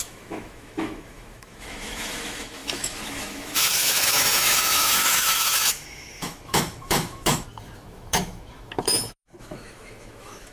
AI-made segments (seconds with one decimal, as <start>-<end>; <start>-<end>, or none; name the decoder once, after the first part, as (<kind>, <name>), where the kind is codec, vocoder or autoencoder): 0.0-10.5 (autoencoder, DAC-VAE)